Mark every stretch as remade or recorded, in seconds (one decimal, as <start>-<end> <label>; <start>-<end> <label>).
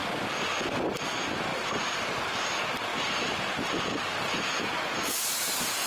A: 0.0-1.5 recorded; 1.5-2.5 remade; 2.5-5.9 recorded